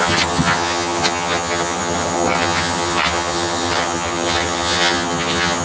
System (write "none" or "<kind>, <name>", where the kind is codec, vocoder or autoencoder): vocoder, HiFi-GAN